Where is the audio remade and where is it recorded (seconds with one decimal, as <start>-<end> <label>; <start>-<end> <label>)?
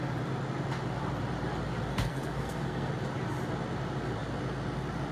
0.0-1.9 recorded; 1.9-2.9 remade; 2.9-5.1 recorded